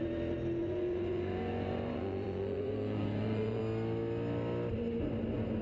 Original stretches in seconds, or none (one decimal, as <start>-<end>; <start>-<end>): 0.0-0.6; 3.6-5.6